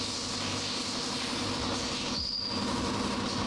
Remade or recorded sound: recorded